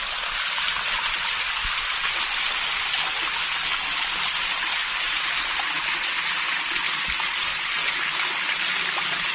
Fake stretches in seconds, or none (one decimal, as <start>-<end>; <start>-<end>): none